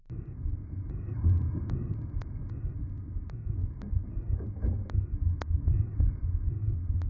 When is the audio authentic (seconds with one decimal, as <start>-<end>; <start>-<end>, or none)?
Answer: 0.0-7.1